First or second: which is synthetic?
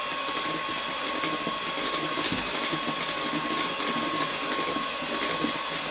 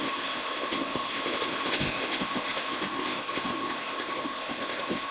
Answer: second